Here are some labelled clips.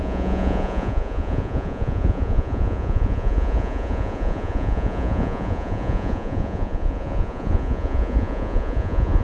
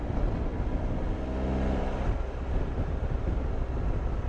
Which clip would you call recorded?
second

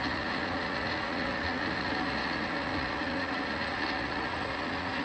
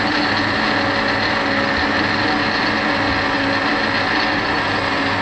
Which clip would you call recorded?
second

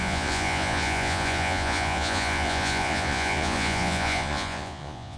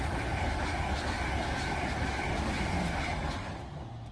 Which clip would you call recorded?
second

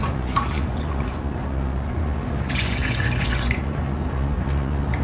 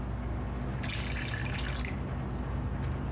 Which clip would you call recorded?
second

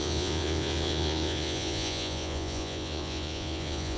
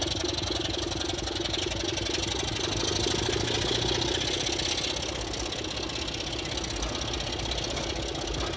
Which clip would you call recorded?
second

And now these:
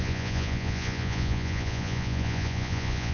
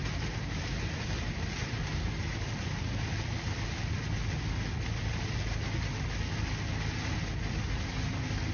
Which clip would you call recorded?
second